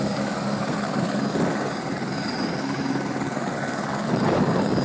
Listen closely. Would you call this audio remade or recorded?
remade